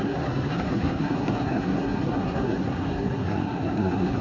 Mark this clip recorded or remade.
remade